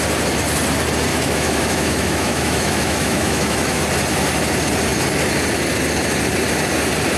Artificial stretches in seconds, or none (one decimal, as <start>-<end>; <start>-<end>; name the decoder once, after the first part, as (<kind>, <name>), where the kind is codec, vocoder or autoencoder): 1.1-3.8 (autoencoder, DAC-VAE)